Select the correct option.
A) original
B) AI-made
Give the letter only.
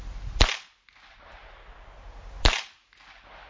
A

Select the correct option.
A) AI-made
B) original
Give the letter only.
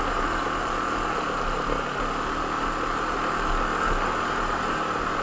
B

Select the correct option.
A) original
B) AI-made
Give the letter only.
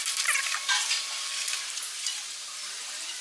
B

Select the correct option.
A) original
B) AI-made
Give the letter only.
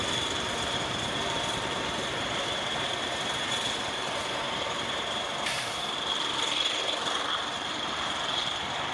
B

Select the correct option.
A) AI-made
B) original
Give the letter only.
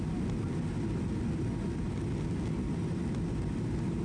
B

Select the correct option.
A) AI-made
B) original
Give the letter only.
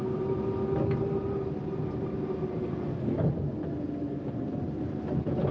B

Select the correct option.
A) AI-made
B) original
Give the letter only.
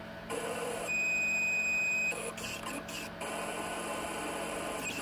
A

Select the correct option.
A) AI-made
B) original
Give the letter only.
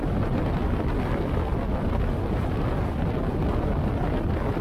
B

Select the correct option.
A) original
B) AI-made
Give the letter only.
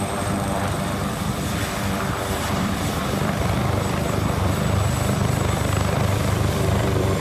B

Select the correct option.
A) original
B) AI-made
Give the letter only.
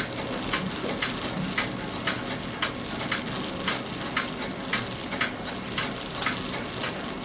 A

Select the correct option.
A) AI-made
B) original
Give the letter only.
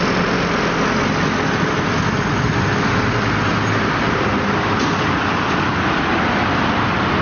B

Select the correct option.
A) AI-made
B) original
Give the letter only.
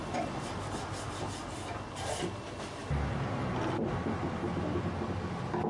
B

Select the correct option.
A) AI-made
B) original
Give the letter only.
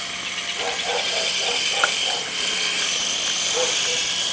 A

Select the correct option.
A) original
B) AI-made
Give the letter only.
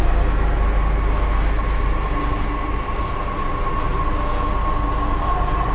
A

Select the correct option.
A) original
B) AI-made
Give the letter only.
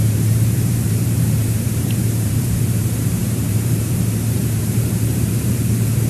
B